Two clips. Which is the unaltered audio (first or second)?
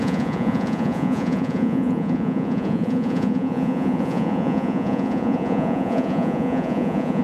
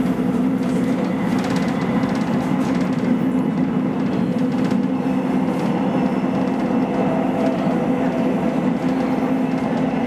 second